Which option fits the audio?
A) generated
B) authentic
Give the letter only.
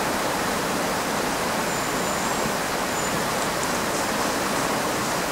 B